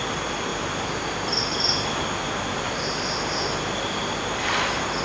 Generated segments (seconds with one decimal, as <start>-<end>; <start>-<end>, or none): none